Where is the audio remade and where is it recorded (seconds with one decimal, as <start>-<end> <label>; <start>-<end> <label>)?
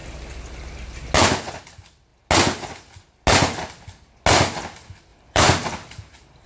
0.0-5.1 recorded; 5.1-6.5 remade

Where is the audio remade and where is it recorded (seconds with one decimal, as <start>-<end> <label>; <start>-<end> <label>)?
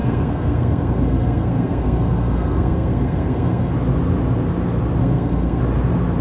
0.0-3.7 remade; 3.7-5.0 recorded; 5.0-5.6 remade; 5.6-6.2 recorded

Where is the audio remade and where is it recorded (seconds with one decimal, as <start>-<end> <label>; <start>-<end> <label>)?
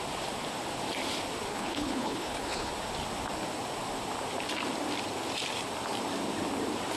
0.0-1.5 recorded; 1.5-2.7 remade; 2.7-7.0 recorded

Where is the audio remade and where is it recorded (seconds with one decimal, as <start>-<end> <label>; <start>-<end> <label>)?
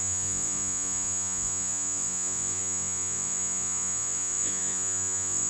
0.0-5.5 remade